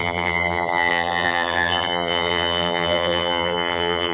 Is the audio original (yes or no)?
no